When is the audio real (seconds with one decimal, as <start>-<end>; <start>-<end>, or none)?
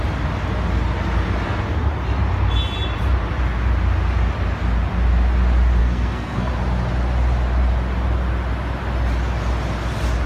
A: 0.0-5.8; 6.5-10.3